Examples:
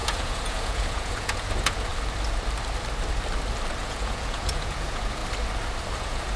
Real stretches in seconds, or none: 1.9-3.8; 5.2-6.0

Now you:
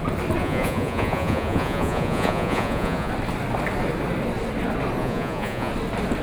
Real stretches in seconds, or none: 0.0-0.4; 3.1-5.0; 5.7-6.2

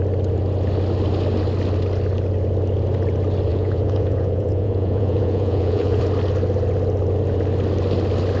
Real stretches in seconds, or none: 0.0-3.5; 6.0-8.4

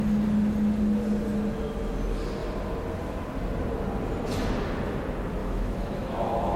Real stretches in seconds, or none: 0.0-5.4

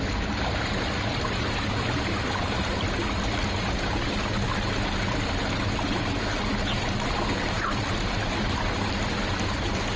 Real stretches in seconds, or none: 0.0-10.0

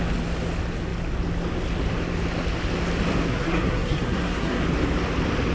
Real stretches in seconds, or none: 0.0-3.3; 4.6-5.5

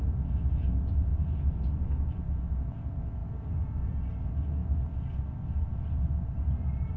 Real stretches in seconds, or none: 0.0-7.0